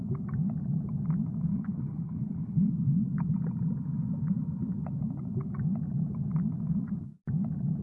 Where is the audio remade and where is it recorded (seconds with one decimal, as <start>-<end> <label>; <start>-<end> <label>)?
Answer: 0.0-1.5 recorded; 1.5-2.7 remade; 2.7-7.8 recorded